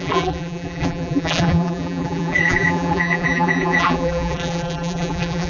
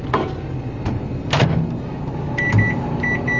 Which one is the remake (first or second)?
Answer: first